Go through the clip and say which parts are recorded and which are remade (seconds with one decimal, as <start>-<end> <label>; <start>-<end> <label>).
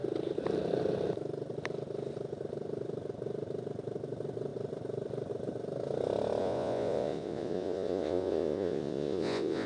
0.0-6.4 recorded; 6.4-9.7 remade